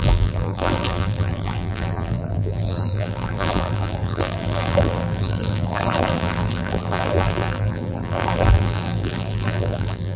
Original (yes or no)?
no